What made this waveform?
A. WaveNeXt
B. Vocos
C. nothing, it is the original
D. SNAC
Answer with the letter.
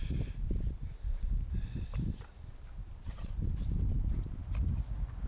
C